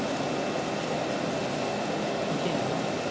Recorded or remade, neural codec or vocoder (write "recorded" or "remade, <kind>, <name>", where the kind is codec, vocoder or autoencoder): recorded